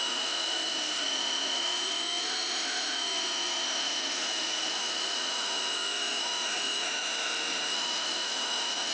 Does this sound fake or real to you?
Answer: fake